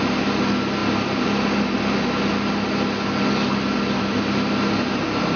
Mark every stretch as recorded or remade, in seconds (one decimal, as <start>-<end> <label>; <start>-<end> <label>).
0.0-5.4 recorded